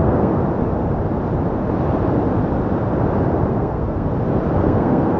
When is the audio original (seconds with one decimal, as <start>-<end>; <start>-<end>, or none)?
0.4-3.5; 4.1-4.6